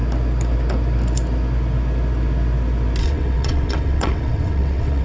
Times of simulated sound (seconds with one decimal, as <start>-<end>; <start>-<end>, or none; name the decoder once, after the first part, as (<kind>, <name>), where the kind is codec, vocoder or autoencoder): 3.0-5.0 (vocoder, WaveNeXt)